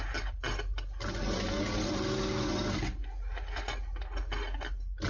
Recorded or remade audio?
recorded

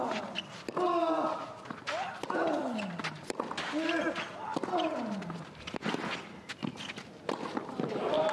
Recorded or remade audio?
recorded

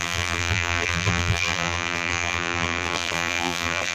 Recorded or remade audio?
remade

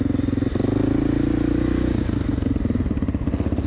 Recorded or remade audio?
recorded